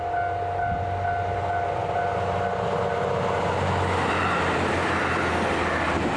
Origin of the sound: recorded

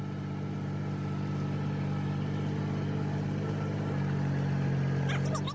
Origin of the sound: recorded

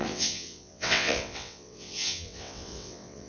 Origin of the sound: remade